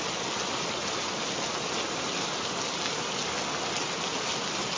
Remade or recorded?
recorded